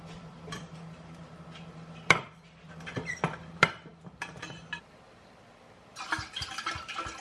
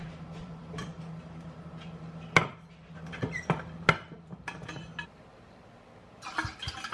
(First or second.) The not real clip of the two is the first